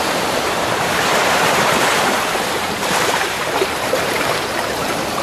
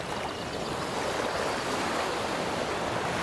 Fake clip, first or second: first